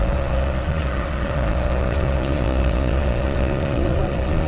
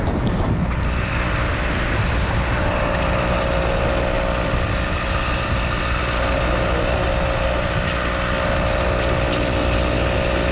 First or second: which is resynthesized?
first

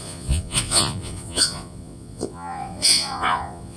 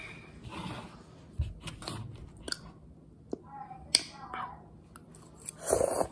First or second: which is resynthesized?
first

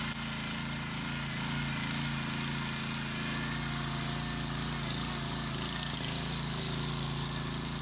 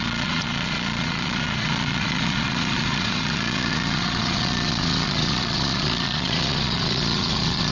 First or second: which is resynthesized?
second